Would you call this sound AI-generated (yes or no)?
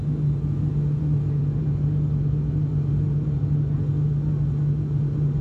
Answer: no